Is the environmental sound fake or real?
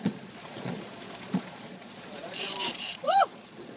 fake